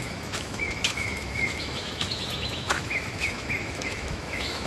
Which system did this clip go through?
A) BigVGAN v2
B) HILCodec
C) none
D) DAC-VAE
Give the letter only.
D